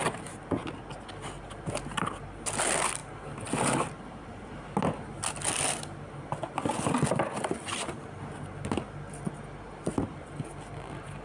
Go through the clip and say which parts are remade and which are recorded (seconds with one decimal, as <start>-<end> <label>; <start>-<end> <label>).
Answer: 0.0-11.2 recorded